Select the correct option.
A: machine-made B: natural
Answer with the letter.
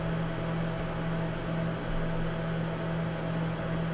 B